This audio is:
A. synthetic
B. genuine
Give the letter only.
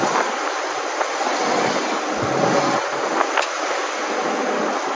B